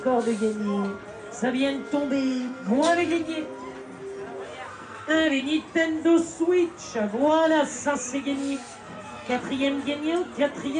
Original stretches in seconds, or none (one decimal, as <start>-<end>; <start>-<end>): 0.0-2.3; 3.3-4.7; 5.4-8.4; 9.4-10.8